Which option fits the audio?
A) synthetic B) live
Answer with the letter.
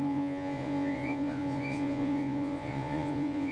A